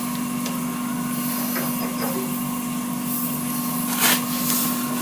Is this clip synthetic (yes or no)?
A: no